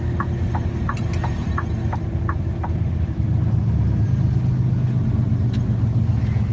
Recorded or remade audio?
recorded